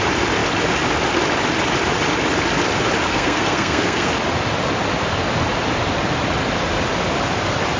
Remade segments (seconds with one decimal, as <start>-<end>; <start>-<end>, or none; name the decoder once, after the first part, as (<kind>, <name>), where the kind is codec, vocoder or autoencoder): 3.1-4.1 (codec, SNAC)